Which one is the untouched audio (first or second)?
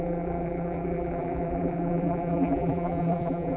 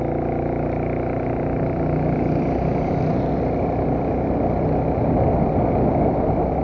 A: second